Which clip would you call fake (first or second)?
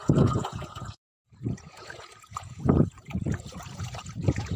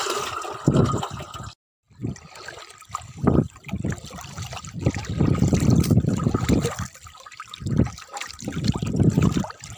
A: first